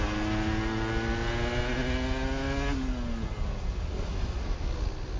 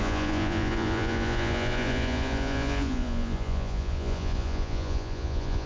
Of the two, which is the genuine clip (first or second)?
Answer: first